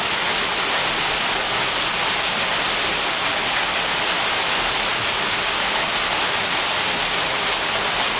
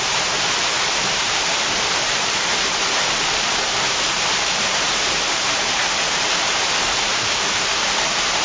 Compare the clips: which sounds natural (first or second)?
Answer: first